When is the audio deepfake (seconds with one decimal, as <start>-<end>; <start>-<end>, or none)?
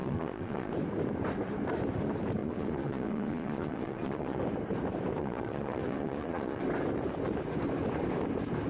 0.0-0.7; 2.4-4.4; 5.2-6.6